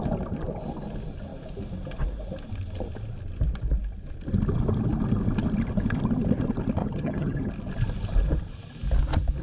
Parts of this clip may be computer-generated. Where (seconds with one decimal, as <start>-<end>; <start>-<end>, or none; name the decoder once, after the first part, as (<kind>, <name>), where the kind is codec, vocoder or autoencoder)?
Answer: 6.8-7.5 (vocoder, HiFi-GAN)